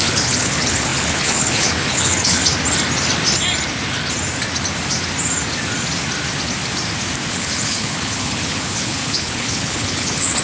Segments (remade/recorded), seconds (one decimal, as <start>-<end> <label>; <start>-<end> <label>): 0.0-2.4 remade; 2.4-7.3 recorded; 7.3-10.4 remade